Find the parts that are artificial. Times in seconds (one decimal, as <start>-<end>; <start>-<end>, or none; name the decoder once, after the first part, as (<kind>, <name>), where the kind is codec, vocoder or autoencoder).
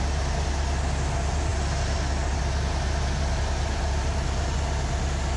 none